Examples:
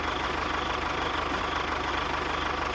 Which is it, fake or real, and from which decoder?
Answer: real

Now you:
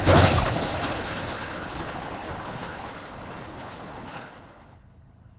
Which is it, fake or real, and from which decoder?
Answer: fake, codec, HILCodec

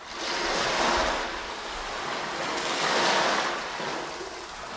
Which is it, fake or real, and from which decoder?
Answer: real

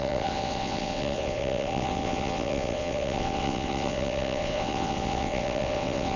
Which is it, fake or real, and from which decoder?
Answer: fake, vocoder, WaveNeXt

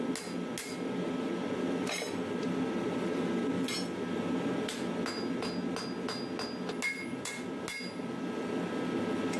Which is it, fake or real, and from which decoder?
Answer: real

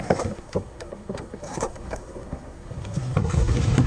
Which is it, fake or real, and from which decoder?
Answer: fake, codec, SNAC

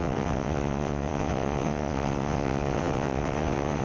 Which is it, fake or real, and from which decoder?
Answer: fake, vocoder, WaveNeXt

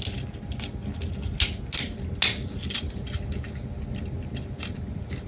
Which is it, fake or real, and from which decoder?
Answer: real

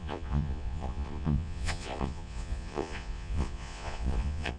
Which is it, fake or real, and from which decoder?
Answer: fake, vocoder, Vocos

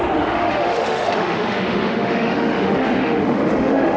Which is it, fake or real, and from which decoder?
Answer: fake, autoencoder, DAC-VAE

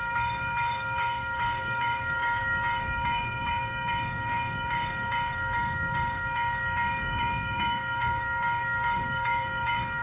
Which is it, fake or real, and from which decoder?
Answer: fake, codec, DAC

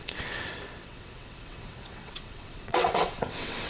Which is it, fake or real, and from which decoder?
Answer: fake, vocoder, WaveNeXt